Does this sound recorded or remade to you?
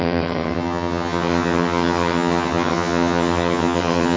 remade